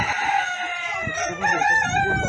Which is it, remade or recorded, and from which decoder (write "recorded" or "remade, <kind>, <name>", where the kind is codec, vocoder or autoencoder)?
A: recorded